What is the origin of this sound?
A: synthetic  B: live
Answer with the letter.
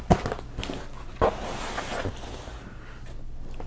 B